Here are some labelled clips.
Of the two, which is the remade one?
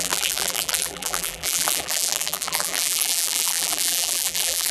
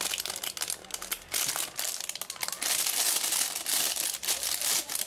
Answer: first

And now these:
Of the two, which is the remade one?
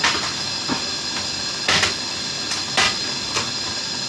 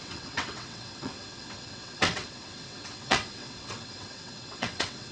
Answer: second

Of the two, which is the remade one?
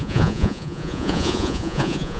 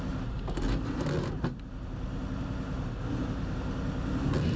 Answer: first